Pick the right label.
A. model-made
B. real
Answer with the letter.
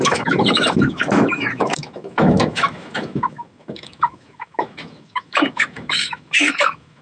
A